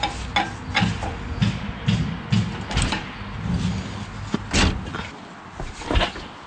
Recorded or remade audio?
recorded